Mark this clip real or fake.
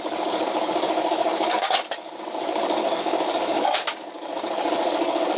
fake